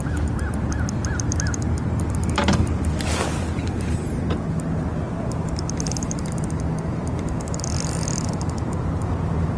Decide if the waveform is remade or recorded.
recorded